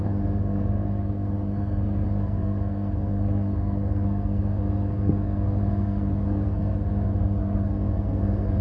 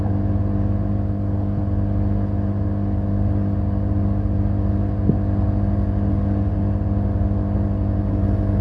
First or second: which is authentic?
second